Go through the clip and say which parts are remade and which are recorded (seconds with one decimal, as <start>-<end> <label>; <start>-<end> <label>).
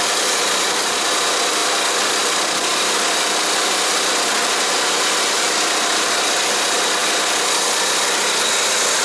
0.0-9.0 recorded